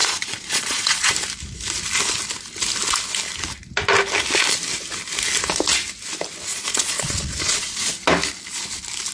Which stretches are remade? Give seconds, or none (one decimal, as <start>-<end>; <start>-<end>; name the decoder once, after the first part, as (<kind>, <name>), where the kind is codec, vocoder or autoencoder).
0.0-1.1 (vocoder, Vocos); 6.5-7.9